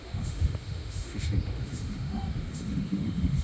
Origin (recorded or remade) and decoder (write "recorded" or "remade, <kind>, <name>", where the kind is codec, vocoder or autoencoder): remade, autoencoder, DAC-VAE